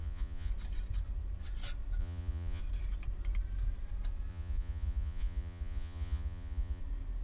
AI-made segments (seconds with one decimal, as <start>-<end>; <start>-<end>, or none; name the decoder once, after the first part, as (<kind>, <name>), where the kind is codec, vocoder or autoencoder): 0.0-0.5 (vocoder, Vocos); 2.0-2.6; 4.3-6.8